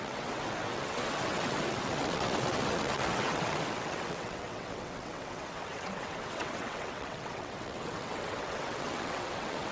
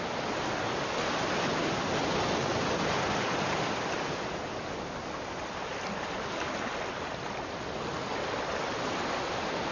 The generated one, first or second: first